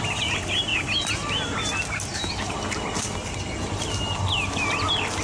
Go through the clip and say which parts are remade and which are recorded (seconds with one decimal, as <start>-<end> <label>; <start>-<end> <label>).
0.0-5.2 recorded